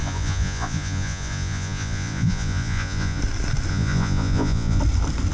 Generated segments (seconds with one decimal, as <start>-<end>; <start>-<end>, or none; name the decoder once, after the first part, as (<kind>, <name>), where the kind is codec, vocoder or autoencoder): 0.0-3.2 (vocoder, Vocos); 3.7-4.8